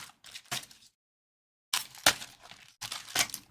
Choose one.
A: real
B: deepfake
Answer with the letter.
A